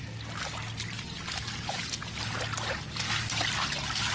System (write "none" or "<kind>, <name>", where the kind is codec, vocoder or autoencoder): none